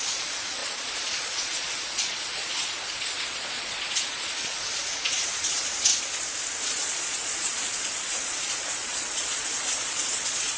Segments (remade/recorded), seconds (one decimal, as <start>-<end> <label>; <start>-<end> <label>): 0.0-5.9 remade; 5.9-6.6 recorded; 6.6-10.6 remade